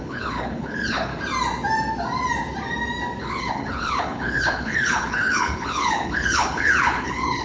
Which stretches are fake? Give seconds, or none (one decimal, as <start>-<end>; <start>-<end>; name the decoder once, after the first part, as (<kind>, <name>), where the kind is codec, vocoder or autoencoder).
0.0-1.1 (codec, HILCodec); 3.2-7.4